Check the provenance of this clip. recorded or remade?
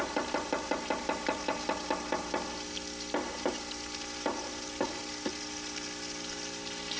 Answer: recorded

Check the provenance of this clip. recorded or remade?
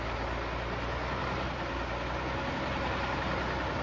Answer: recorded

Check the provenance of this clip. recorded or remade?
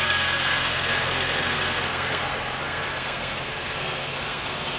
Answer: remade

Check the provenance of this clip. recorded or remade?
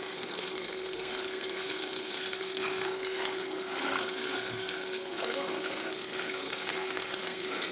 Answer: remade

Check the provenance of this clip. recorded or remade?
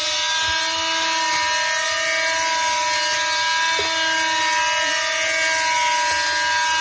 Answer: recorded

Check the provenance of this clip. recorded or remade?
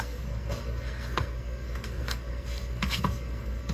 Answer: remade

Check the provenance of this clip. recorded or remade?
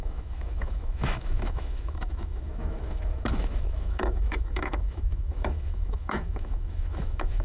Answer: remade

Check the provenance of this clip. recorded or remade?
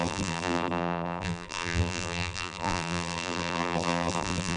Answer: remade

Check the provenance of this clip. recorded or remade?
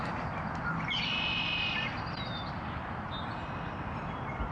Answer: recorded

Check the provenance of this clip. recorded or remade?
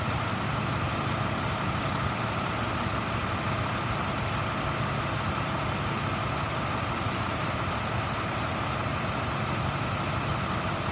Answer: recorded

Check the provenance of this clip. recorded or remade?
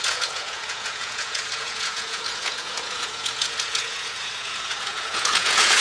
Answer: remade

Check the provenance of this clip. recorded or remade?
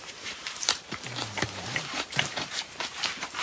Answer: remade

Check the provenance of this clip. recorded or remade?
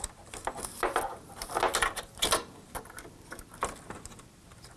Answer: recorded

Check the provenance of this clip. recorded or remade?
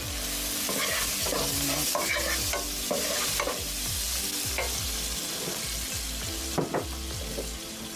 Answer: recorded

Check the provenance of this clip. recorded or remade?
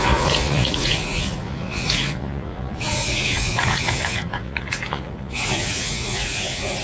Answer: remade